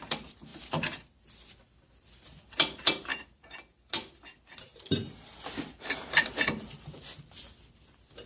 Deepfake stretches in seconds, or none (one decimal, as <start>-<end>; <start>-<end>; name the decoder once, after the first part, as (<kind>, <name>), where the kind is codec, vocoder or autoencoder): none